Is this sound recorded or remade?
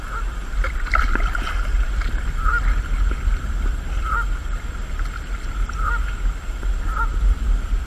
recorded